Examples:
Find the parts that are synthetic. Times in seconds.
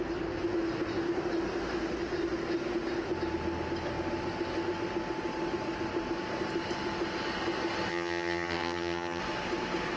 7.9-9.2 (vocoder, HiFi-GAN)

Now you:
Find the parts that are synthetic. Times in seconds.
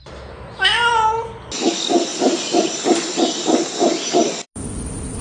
2.1-2.8 (vocoder, BigVGAN v2)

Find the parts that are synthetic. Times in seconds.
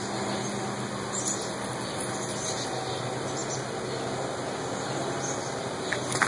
none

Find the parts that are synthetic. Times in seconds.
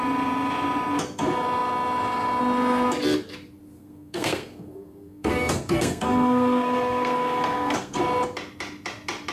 3.8-8.0 (codec, SNAC)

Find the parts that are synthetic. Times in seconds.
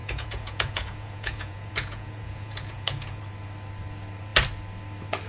0.0-3.2 (vocoder, Vocos)